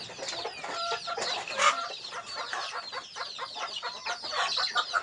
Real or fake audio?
real